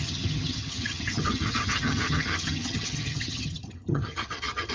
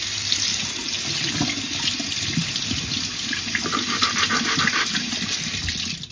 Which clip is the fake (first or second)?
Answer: first